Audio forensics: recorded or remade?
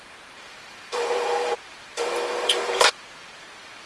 remade